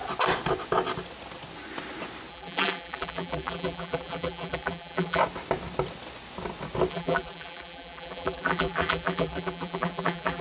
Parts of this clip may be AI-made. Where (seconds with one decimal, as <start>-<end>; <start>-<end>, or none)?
2.3-5.2; 6.9-10.4